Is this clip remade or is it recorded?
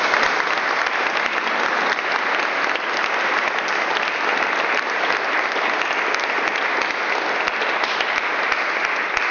recorded